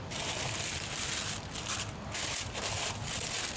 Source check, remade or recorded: recorded